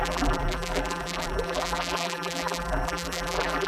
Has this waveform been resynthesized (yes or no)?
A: yes